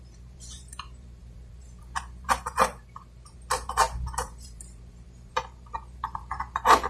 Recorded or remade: remade